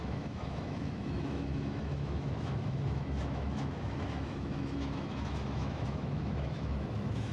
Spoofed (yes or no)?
yes